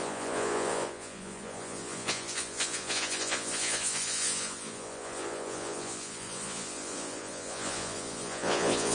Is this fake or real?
fake